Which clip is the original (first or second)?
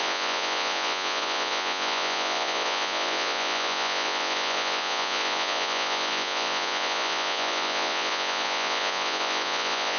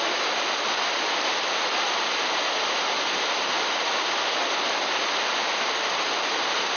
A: second